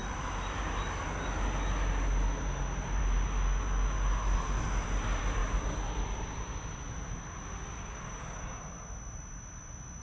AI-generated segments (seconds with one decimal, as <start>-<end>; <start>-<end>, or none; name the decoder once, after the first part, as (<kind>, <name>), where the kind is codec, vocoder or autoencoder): 7.8-8.6 (codec, DAC)